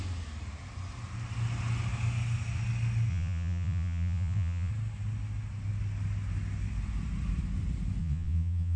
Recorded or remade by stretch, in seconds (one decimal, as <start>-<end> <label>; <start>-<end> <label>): 0.0-3.1 recorded; 3.1-4.7 remade; 4.7-8.0 recorded; 8.0-8.8 remade